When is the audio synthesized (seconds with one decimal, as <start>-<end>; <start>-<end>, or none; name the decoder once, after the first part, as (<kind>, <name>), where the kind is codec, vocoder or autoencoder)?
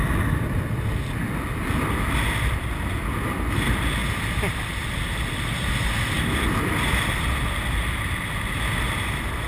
none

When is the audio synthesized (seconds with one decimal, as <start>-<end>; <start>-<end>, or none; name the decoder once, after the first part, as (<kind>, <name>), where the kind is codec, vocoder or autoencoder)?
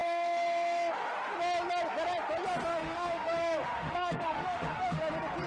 0.0-1.1 (autoencoder, DAC-VAE); 2.7-5.0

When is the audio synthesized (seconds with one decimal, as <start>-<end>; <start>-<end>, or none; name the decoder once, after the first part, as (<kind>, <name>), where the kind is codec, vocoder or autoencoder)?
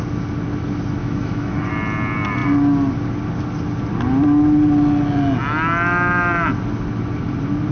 1.0-1.7 (autoencoder, DAC-VAE)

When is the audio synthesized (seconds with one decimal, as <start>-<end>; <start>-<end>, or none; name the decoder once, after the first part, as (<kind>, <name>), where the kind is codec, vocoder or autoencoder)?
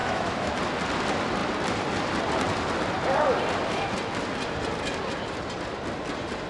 0.0-0.6 (autoencoder, DAC-VAE)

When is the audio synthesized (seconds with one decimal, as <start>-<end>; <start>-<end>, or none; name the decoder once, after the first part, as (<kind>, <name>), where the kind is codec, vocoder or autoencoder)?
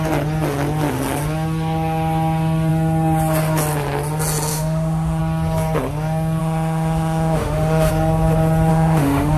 4.5-5.2 (autoencoder, DAC-VAE); 6.4-7.9; 8.7-9.4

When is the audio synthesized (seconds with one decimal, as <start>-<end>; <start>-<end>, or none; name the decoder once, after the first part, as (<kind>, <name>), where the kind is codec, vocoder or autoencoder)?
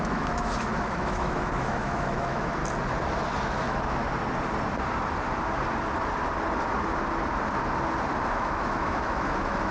0.0-2.6 (autoencoder, DAC-VAE); 3.5-4.0; 8.3-9.7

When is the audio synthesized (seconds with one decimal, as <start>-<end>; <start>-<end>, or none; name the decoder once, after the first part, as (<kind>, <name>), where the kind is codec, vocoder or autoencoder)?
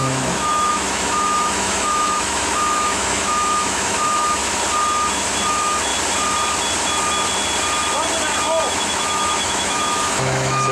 0.0-4.4 (autoencoder, DAC-VAE); 5.5-5.9; 8.7-10.7